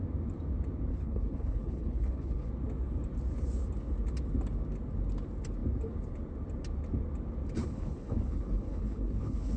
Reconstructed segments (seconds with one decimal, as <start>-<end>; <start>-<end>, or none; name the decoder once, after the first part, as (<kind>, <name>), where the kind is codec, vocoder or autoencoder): 0.9-2.5 (codec, HILCodec); 7.6-9.6